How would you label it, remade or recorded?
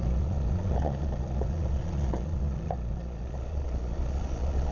remade